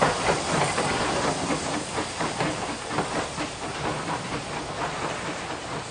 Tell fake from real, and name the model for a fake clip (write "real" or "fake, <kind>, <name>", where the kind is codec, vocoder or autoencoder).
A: real